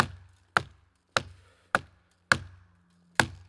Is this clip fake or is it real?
real